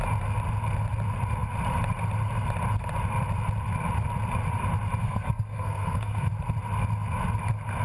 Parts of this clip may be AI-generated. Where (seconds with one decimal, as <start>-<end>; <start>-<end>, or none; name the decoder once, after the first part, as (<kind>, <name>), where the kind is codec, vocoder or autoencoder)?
5.0-6.3 (codec, SNAC)